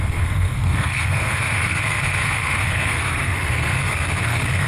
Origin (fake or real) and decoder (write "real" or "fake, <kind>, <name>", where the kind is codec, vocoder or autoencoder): fake, codec, SNAC